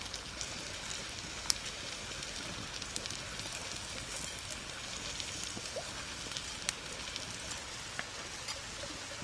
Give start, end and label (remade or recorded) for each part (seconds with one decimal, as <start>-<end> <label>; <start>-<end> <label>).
0.0-9.2 recorded